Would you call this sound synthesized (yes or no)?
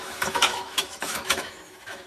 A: yes